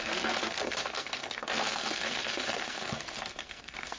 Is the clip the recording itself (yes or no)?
no